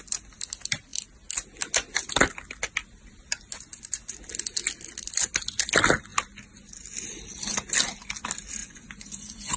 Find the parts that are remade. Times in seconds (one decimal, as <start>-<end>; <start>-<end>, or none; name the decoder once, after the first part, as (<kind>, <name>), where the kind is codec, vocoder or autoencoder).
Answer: 8.6-9.6 (vocoder, Vocos)